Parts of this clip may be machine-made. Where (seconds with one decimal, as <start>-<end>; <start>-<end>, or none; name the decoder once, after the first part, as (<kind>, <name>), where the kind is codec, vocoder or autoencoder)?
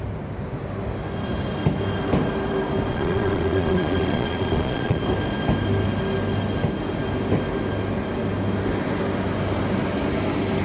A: 2.9-5.0 (vocoder, Vocos)